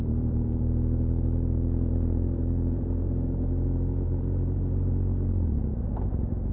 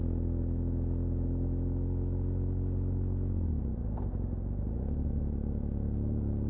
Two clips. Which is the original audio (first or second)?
second